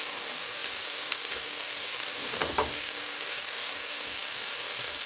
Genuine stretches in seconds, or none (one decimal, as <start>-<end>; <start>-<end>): none